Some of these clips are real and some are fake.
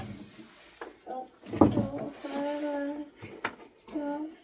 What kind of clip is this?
real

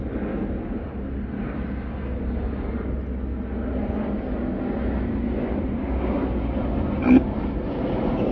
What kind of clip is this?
real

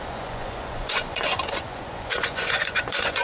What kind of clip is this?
fake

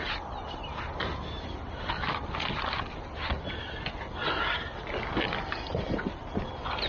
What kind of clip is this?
real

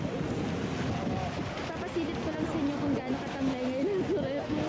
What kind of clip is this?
real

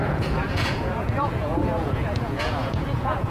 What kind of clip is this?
fake